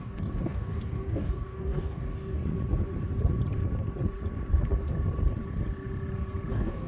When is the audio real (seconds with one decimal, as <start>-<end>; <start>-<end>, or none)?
2.4-6.5